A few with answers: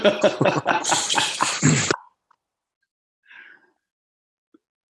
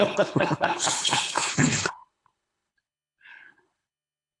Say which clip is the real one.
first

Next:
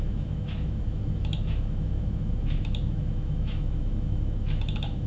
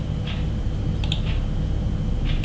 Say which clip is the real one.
second